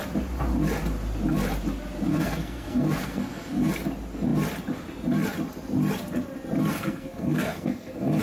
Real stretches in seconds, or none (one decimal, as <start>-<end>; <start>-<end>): 0.0-2.1; 3.7-6.7